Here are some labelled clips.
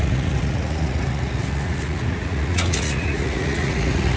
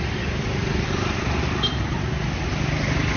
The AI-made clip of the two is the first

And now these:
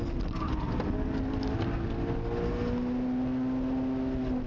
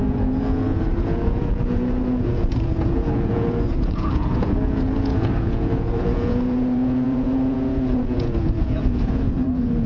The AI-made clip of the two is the second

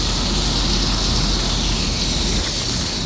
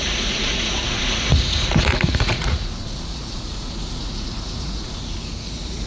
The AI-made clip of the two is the second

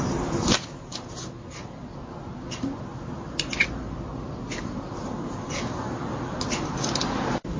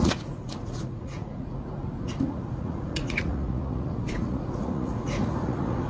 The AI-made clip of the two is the second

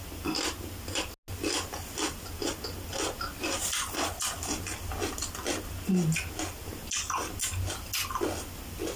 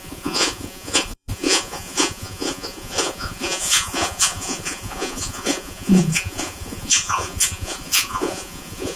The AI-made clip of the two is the second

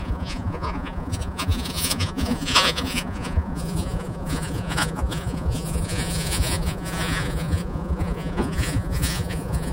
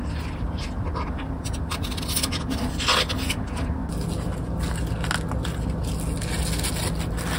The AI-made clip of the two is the first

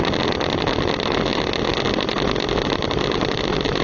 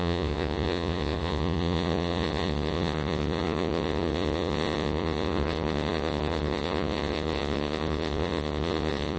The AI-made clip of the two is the second